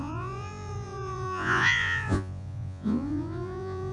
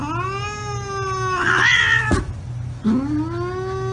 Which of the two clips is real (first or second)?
second